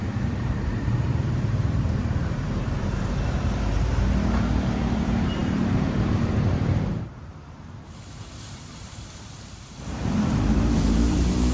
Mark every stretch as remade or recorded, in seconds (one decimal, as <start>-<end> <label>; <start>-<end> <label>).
0.0-11.5 remade